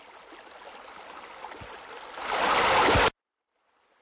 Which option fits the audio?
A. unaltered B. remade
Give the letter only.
A